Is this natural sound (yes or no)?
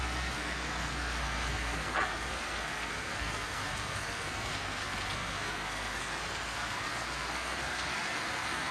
no